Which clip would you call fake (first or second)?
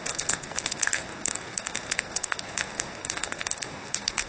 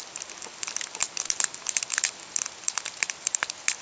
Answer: first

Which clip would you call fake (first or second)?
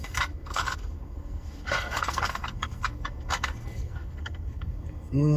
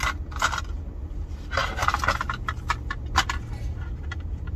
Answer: first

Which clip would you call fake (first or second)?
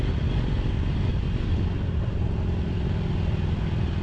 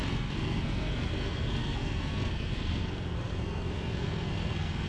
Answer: second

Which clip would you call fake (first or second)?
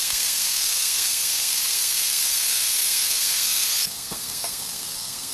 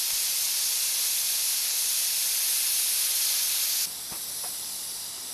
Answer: first